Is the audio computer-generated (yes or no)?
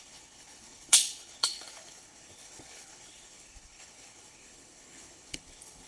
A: yes